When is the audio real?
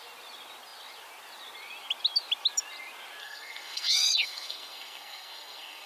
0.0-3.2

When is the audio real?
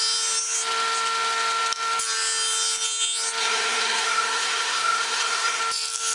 0.0-3.4; 5.6-6.1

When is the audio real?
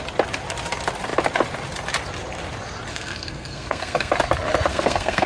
0.0-2.9; 4.1-4.7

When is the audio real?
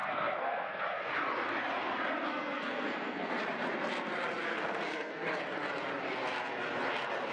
1.1-2.3; 3.4-4.5; 5.4-7.3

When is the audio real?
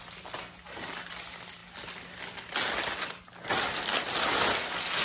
0.0-5.0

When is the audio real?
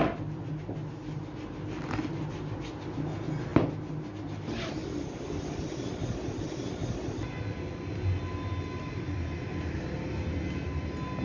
0.0-11.2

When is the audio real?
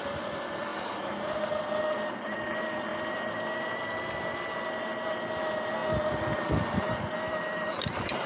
0.0-8.3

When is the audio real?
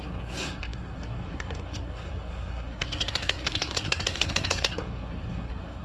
none